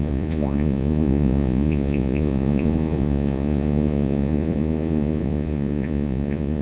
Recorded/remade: remade